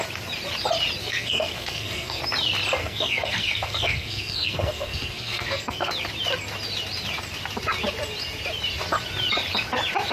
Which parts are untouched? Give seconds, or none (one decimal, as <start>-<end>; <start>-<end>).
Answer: 0.0-1.0; 2.2-2.8; 5.9-10.1